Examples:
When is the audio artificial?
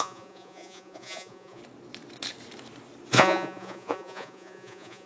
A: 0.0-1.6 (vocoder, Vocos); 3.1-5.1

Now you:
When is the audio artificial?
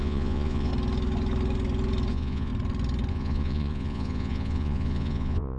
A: 0.0-0.7 (vocoder, Vocos); 2.1-2.5; 3.1-5.6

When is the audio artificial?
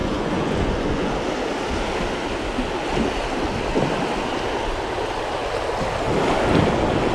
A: 0.0-1.1 (vocoder, Vocos)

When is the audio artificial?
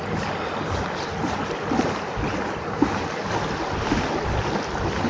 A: none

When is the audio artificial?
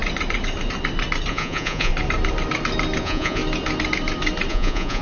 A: 1.3-1.9 (vocoder, Vocos); 3.0-3.4; 4.5-5.0